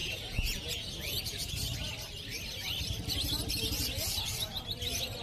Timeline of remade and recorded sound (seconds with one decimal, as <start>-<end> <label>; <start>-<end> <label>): 0.0-1.5 remade; 1.5-5.2 recorded